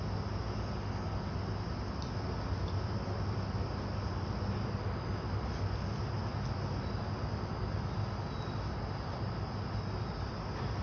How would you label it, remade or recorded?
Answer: recorded